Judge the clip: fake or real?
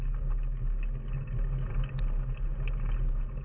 real